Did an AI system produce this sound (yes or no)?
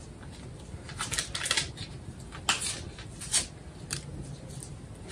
no